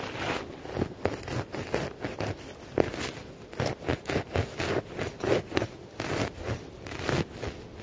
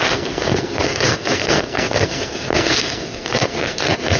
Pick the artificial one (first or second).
second